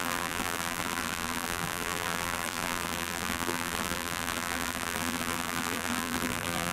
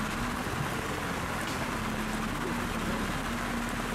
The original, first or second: second